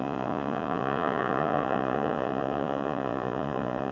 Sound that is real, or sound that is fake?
fake